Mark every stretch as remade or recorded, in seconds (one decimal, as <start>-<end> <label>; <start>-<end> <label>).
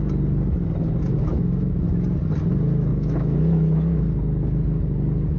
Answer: 0.0-1.3 recorded; 1.3-1.8 remade; 1.8-2.9 recorded; 2.9-4.0 remade; 4.0-5.4 recorded